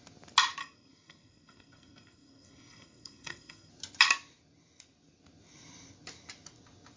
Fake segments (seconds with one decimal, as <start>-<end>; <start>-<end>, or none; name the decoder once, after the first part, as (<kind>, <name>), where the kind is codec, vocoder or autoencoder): 0.6-3.7 (codec, SNAC)